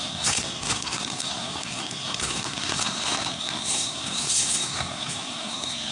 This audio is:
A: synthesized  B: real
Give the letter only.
A